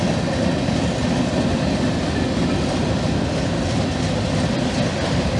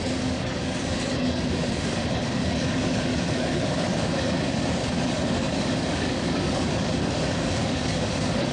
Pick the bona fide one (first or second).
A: first